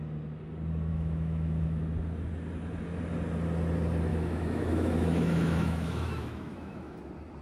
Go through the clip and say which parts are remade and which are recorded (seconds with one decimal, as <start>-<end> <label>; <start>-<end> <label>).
0.0-0.9 recorded; 0.9-1.8 remade; 1.8-4.1 recorded; 4.1-7.0 remade; 7.0-7.4 recorded